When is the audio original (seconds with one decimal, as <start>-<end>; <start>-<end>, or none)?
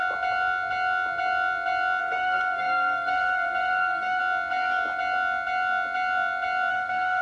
0.0-2.0; 4.2-6.7